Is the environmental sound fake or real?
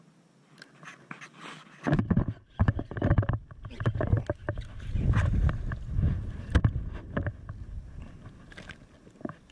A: real